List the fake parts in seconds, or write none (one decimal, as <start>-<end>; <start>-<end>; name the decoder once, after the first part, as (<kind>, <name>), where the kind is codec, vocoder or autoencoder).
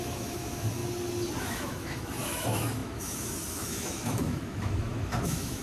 0.0-0.8 (autoencoder, DAC-VAE); 1.4-5.6